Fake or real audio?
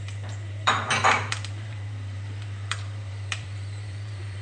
fake